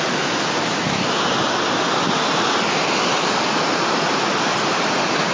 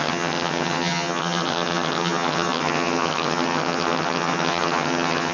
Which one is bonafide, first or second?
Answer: first